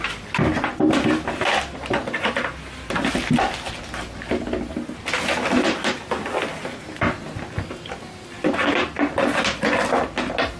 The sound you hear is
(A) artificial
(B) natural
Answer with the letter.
B